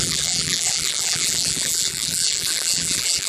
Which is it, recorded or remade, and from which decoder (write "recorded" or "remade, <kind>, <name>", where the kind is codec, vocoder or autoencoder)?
remade, vocoder, BigVGAN v2